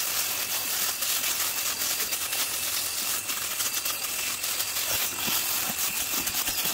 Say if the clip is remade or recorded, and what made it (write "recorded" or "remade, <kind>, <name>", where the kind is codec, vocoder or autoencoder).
recorded